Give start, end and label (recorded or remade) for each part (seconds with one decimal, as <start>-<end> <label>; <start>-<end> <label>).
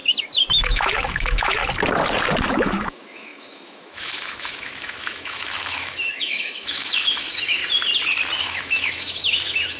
0.0-0.6 recorded; 0.6-1.6 remade; 1.6-2.4 recorded; 2.4-7.6 remade; 7.6-8.4 recorded; 8.4-9.8 remade